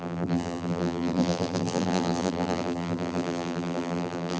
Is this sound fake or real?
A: fake